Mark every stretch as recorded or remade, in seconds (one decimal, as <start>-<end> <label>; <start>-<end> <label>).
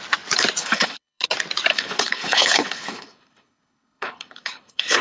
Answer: 0.0-0.6 recorded; 0.6-1.2 remade; 1.2-1.7 recorded; 1.7-5.0 remade